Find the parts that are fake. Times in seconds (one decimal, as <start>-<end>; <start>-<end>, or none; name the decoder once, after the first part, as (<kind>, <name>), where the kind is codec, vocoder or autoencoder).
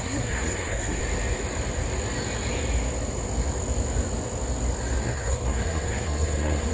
0.0-1.0 (codec, SNAC); 5.0-6.7